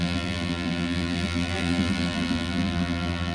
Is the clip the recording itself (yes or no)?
no